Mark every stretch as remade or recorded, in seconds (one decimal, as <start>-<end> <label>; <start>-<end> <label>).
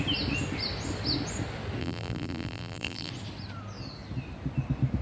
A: 0.0-1.8 recorded; 1.8-3.1 remade; 3.1-5.0 recorded